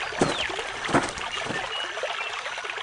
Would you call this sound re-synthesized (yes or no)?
no